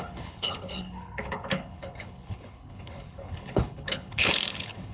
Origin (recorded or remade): remade